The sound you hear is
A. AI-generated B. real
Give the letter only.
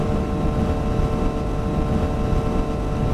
B